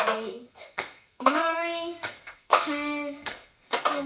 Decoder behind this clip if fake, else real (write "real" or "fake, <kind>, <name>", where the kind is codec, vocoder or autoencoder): fake, codec, SNAC